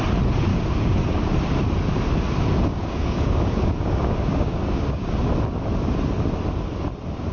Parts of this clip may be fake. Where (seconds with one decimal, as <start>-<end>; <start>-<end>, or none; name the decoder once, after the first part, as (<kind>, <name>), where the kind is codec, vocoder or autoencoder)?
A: 0.5-1.2 (codec, DAC); 2.7-5.3